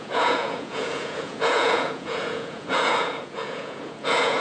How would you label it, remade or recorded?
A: remade